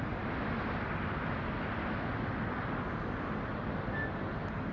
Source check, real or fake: real